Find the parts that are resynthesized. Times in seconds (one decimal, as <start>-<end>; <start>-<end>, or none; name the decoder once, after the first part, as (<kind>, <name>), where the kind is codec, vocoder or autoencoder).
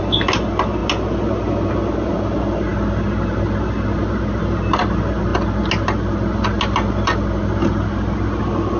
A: none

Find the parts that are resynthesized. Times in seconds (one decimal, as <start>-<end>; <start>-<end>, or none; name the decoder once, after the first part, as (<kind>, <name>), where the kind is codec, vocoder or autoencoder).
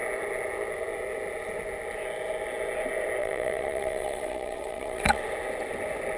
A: 3.2-5.2 (vocoder, WaveNeXt)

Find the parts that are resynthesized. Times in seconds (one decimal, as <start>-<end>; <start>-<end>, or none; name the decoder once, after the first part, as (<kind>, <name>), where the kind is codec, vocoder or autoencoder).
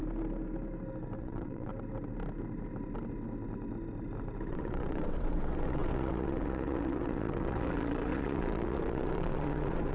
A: 1.2-1.7 (vocoder, WaveNeXt); 4.5-9.9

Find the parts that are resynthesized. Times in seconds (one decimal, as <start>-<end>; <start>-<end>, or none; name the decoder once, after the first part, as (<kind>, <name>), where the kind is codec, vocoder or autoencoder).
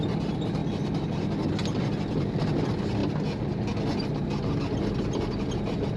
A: none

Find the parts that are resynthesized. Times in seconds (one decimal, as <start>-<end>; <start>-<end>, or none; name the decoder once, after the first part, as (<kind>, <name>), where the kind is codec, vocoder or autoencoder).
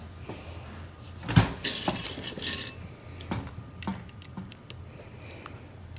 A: none